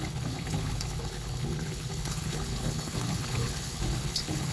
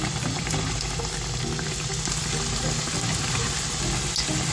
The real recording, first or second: second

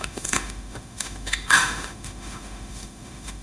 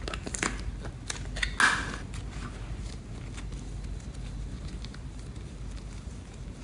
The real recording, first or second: second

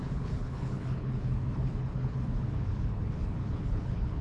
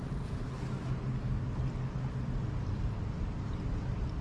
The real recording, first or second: second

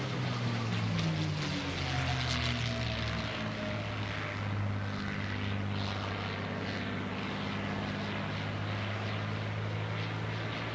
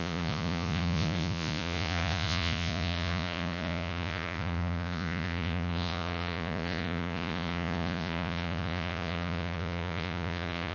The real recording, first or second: first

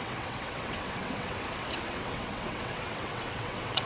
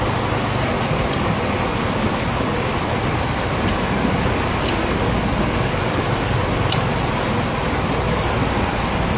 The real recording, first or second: second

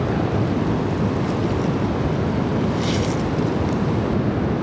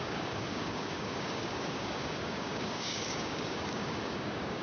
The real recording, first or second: first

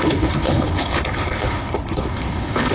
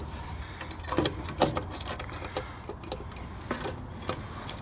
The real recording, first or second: second